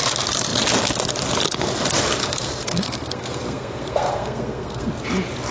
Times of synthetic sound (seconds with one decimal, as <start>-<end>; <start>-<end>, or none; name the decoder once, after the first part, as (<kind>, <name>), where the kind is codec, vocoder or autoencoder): 2.2-4.9 (codec, SNAC)